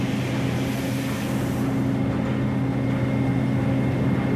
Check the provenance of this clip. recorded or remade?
recorded